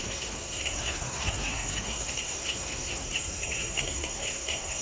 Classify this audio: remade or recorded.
remade